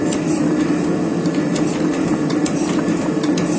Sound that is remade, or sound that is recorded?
recorded